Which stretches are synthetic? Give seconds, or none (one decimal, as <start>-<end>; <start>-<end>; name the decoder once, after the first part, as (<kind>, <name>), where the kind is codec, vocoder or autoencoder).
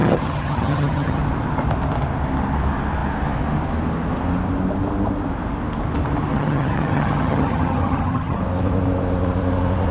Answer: 0.0-1.2 (vocoder, HiFi-GAN); 6.3-8.4